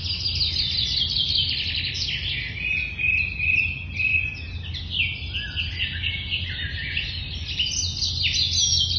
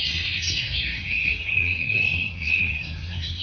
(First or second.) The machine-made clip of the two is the second